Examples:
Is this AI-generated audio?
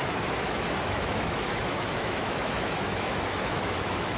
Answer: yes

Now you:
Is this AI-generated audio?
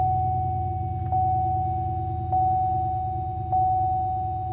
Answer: no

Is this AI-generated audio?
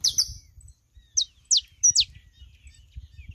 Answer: no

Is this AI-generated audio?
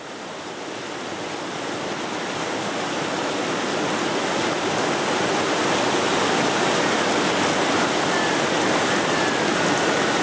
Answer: no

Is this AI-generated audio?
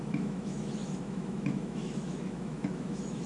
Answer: yes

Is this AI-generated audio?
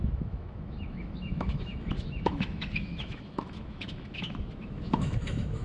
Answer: yes